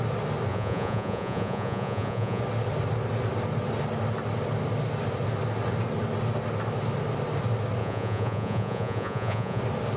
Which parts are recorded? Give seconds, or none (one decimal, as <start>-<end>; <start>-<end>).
0.0-0.5; 2.4-7.8; 9.6-10.0